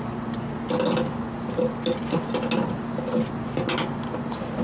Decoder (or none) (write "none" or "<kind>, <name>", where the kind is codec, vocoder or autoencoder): none